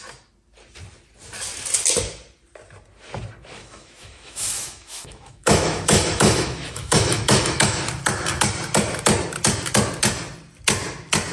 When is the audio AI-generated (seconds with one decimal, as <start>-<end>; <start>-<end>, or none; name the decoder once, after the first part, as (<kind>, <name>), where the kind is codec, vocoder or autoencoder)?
3.6-7.8 (autoencoder, DAC-VAE)